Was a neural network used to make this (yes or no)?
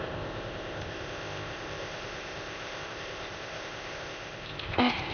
yes